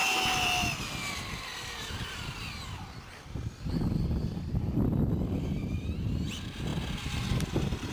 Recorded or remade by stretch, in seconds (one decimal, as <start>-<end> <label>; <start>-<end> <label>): 0.0-7.9 recorded